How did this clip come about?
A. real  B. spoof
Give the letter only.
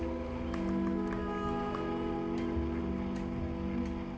A